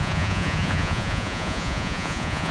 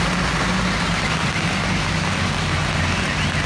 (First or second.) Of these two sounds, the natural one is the second